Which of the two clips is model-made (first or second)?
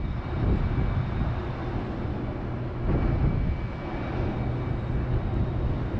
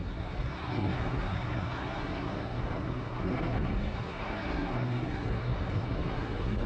second